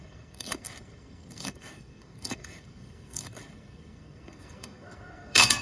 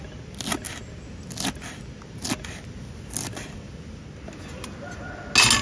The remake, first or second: first